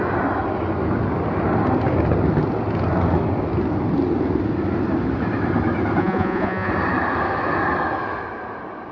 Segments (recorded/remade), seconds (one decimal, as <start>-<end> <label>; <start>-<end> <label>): 0.0-6.0 recorded; 6.0-6.7 remade; 6.7-8.9 recorded